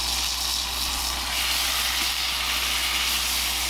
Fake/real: real